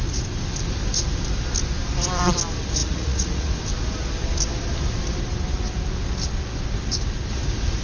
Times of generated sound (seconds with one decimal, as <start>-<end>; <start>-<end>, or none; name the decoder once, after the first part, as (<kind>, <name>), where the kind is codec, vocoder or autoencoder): 2.8-3.5 (vocoder, Vocos)